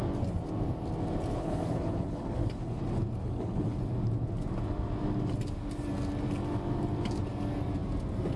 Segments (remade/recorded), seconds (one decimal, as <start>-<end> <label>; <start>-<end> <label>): 0.0-1.3 recorded; 1.3-2.8 remade; 2.8-3.2 recorded; 3.2-3.8 remade; 3.8-8.4 recorded